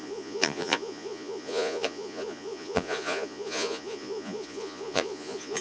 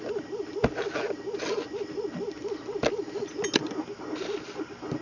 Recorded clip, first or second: second